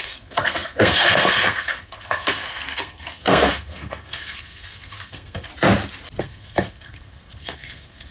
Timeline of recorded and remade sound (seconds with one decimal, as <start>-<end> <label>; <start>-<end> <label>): 0.0-5.5 remade; 5.5-6.2 recorded; 6.2-8.1 remade